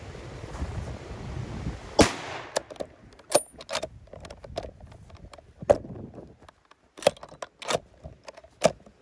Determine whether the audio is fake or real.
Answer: real